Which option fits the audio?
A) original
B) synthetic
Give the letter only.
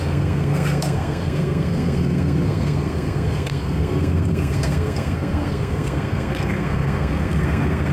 B